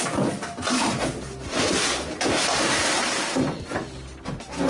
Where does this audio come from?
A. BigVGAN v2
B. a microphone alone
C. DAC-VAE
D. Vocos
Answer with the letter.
B